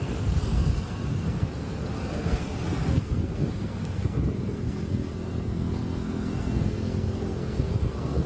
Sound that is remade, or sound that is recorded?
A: remade